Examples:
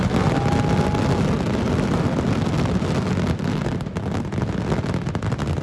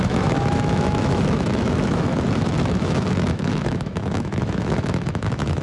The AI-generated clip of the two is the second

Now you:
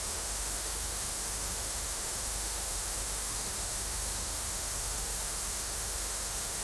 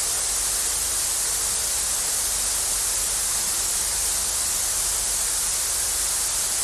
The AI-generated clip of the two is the first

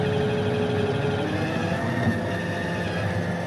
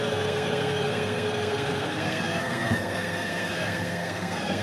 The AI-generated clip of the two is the second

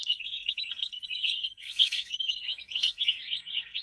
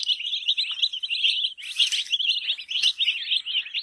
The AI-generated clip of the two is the first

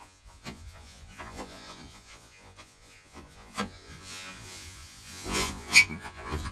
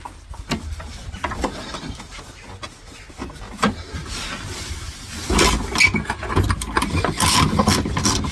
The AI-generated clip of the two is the first